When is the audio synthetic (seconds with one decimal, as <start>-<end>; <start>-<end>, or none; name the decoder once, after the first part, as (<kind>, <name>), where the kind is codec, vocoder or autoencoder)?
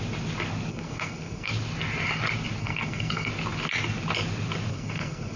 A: 0.7-1.5 (codec, SNAC); 2.6-3.3; 4.7-5.4